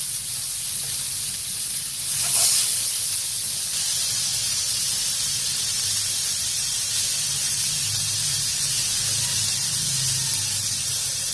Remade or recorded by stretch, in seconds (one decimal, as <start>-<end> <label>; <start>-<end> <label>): 0.0-11.3 recorded